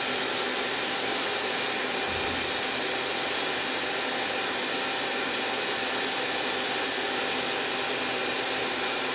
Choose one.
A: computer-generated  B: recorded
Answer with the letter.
B